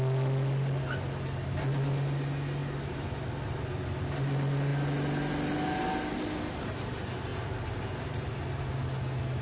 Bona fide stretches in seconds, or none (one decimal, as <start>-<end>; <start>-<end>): 0.0-9.4